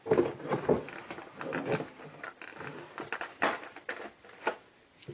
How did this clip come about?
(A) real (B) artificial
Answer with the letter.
A